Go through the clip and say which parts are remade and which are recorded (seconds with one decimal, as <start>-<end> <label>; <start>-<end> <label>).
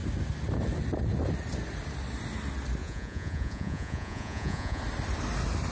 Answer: 0.0-2.8 recorded; 2.8-4.8 remade; 4.8-5.7 recorded